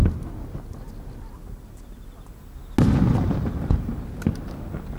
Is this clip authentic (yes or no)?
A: yes